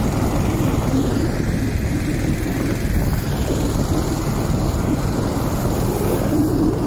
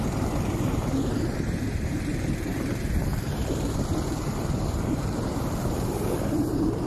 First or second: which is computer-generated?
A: second